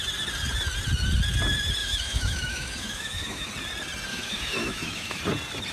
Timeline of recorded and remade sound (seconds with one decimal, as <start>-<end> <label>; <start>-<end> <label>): 0.0-1.8 recorded; 1.8-3.5 remade; 3.5-4.1 recorded; 4.1-5.2 remade; 5.2-5.7 recorded